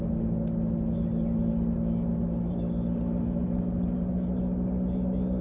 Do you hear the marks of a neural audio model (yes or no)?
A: no